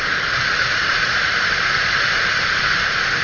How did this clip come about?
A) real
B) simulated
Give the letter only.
A